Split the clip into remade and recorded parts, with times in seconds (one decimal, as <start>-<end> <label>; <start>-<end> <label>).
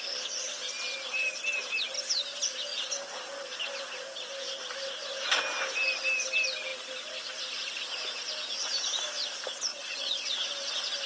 0.0-9.7 recorded; 9.7-10.3 remade; 10.3-11.1 recorded